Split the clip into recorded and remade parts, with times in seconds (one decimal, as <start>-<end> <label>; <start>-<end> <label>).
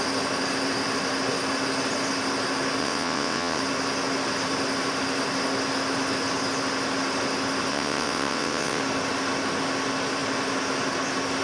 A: 0.0-2.8 recorded; 2.8-3.6 remade; 3.6-7.7 recorded; 7.7-8.8 remade; 8.8-11.4 recorded